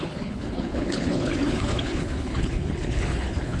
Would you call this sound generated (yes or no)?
yes